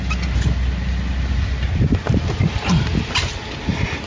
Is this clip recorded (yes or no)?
yes